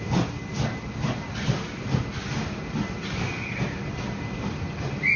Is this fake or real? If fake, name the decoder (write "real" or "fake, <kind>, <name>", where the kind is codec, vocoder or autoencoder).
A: real